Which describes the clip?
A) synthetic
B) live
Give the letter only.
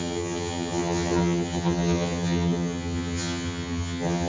A